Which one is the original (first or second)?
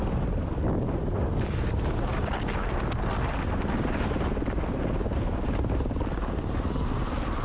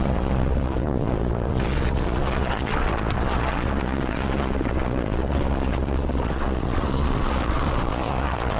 first